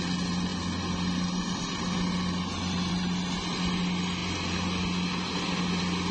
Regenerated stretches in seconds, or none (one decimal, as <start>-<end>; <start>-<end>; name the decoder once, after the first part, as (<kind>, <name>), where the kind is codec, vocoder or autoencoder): none